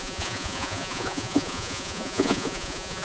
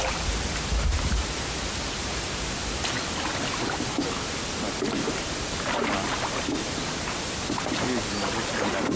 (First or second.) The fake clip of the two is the first